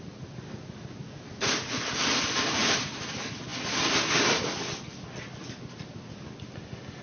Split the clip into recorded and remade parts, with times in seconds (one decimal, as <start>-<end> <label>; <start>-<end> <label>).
0.0-7.0 recorded